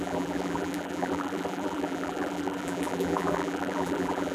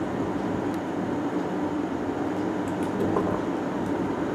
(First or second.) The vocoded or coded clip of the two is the first